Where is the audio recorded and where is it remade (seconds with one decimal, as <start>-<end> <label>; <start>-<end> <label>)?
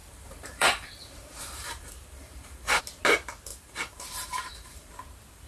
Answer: 0.0-2.8 remade; 2.8-3.5 recorded; 3.5-4.9 remade; 4.9-5.5 recorded